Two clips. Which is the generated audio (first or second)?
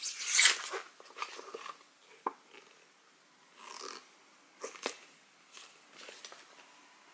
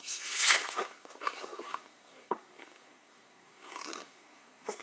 second